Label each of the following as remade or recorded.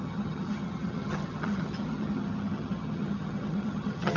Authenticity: remade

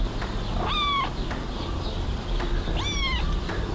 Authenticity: recorded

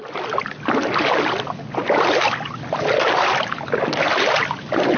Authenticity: recorded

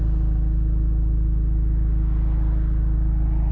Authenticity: recorded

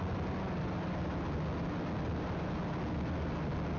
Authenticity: recorded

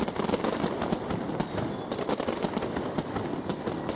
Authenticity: recorded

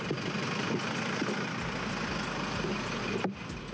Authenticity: recorded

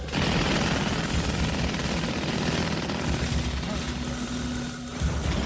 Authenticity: recorded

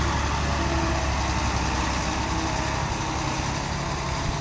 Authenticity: recorded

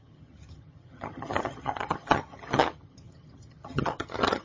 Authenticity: remade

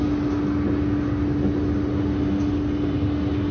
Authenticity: recorded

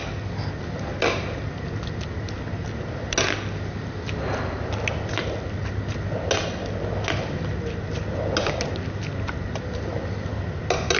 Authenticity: recorded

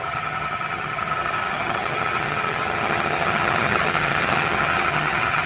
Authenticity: remade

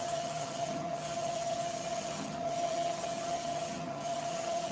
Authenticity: remade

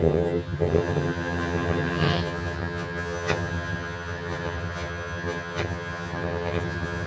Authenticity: remade